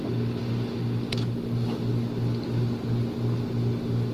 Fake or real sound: real